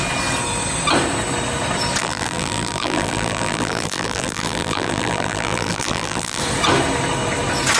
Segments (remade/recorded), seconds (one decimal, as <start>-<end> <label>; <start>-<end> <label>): 0.0-2.0 recorded; 2.0-6.4 remade; 6.4-7.8 recorded